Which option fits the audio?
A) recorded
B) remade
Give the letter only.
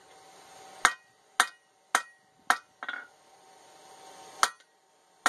A